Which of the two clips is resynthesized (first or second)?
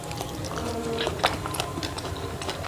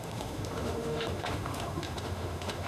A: second